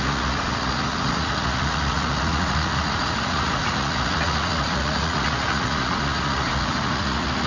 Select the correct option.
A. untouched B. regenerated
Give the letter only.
B